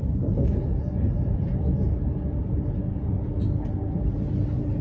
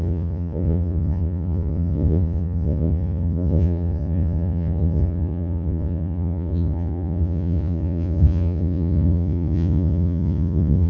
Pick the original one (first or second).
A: first